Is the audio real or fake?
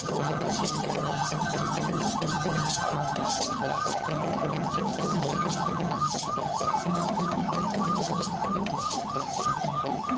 fake